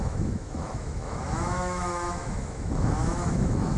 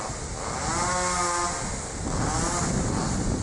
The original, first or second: second